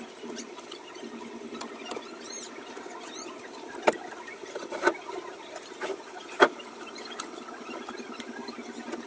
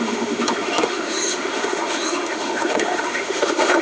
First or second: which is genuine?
first